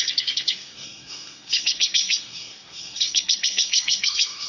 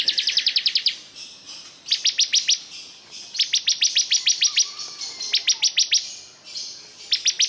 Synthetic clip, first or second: first